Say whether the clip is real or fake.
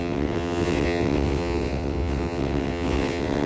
fake